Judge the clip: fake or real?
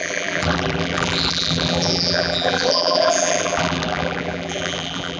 fake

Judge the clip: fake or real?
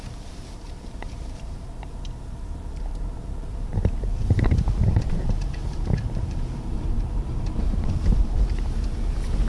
fake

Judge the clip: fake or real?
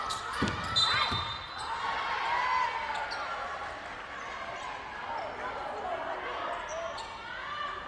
real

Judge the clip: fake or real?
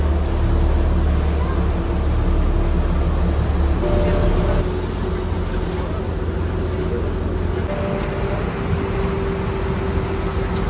real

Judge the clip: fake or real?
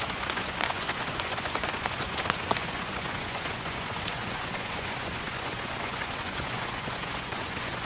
fake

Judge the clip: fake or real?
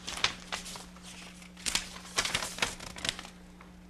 real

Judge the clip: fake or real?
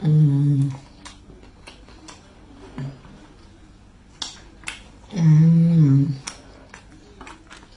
real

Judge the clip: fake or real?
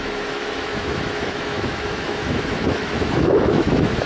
fake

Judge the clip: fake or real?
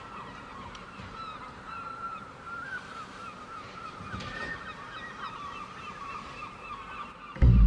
fake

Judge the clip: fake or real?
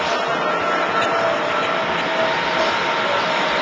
real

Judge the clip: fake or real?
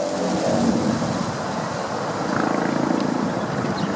real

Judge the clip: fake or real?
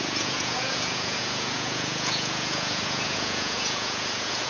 fake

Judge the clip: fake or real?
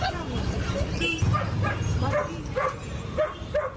fake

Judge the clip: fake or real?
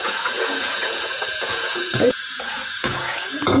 fake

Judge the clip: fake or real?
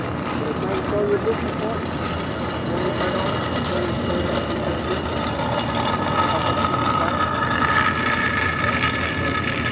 real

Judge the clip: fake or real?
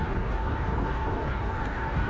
fake